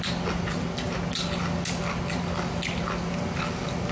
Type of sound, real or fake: real